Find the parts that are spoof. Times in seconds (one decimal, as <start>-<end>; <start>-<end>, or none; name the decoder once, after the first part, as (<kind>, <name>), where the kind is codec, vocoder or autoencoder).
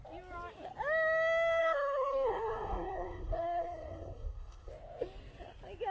1.6-4.7 (codec, SNAC)